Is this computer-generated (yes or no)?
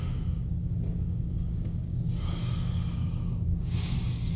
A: yes